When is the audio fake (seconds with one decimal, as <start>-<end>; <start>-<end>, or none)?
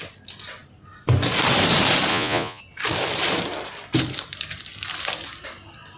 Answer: 2.1-2.6